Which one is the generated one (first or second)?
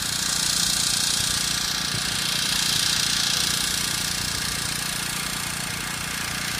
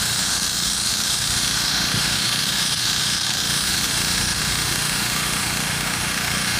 second